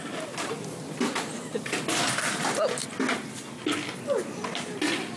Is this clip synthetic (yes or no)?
no